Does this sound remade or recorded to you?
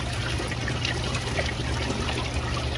recorded